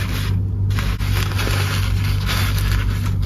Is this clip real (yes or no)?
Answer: yes